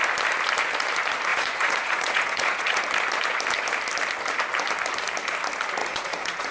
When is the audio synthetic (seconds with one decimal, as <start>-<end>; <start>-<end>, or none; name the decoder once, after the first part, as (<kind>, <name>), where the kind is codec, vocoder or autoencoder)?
1.3-2.8 (vocoder, Vocos); 5.8-6.5